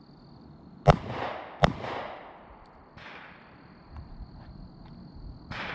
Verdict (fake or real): real